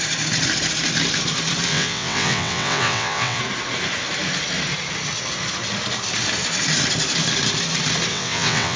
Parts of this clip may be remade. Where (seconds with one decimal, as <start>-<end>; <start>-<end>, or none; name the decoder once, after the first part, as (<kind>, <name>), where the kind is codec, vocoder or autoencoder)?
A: 1.7-3.4 (vocoder, WaveNeXt); 8.1-8.8